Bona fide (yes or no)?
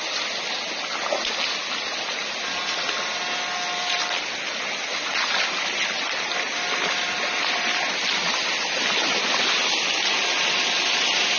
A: yes